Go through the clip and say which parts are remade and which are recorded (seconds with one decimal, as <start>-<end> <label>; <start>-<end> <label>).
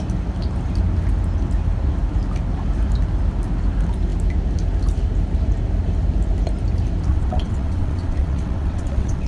0.0-7.1 recorded; 7.1-9.3 remade